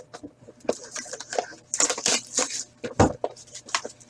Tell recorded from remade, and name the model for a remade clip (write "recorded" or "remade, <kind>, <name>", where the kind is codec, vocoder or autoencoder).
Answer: recorded